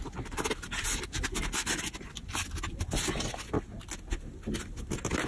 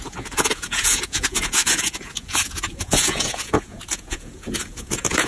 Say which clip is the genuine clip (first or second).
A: first